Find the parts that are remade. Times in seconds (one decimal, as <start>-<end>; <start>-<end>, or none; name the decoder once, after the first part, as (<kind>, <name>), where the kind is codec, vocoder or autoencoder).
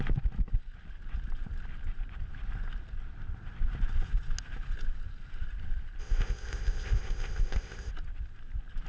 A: 6.0-7.9 (codec, ZipCodec)